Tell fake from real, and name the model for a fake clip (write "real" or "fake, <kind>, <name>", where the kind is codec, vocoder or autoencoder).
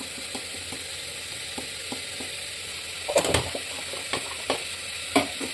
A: real